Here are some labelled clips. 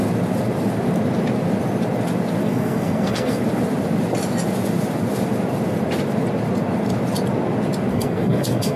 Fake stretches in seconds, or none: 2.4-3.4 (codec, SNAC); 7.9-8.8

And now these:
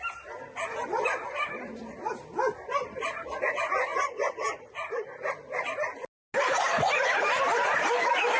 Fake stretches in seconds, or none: none

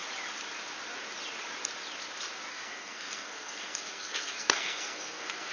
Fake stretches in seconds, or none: 2.5-5.5 (codec, SNAC)

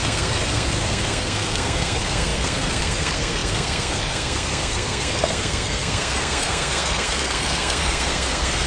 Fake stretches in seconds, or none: 0.0-8.7 (codec, SNAC)

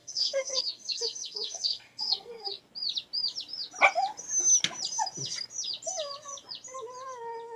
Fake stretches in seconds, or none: 0.0-2.6 (codec, SNAC)

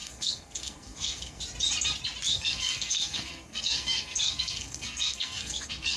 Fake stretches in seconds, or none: 0.0-1.4 (codec, SNAC); 2.3-6.0

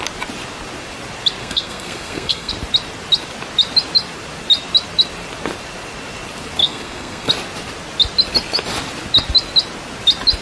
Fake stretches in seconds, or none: 1.4-2.5 (codec, SNAC); 6.6-7.3